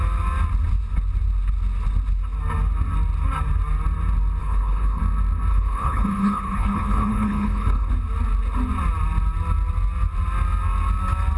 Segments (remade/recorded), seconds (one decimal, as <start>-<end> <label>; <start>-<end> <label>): 0.0-4.4 recorded; 4.4-5.0 remade; 5.0-5.5 recorded; 5.5-7.9 remade; 7.9-11.4 recorded